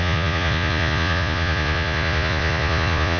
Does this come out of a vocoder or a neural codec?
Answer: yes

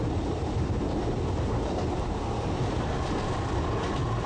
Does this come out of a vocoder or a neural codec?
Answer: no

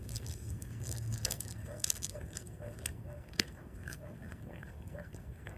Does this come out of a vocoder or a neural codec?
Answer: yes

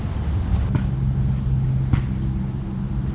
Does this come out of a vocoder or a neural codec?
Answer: no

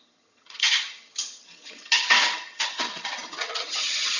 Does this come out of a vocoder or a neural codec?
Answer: yes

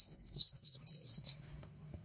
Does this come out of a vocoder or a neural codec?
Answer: yes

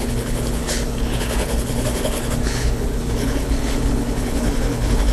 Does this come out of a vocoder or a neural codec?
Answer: yes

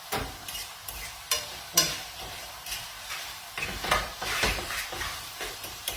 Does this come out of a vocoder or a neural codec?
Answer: yes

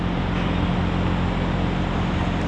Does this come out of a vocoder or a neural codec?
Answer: no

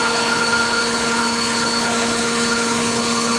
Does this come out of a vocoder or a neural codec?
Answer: yes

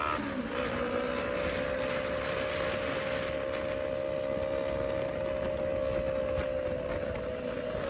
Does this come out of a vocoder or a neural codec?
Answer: no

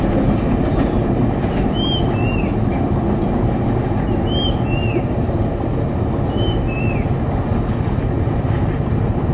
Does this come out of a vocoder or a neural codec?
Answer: no